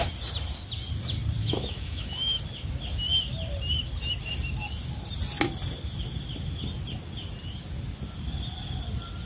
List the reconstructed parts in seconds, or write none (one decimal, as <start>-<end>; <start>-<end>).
1.4-2.4

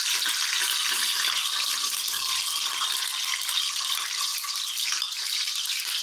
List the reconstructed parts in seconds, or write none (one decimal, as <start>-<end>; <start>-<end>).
none

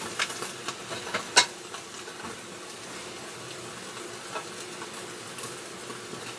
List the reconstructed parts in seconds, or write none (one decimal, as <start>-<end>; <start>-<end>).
none

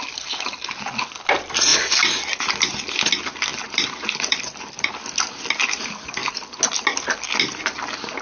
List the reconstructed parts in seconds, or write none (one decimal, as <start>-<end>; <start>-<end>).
1.7-3.1; 3.5-4.9

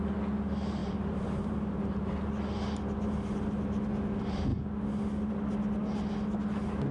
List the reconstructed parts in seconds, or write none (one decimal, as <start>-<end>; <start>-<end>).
0.8-2.2

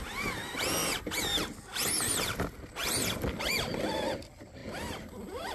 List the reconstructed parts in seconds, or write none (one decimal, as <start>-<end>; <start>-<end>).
none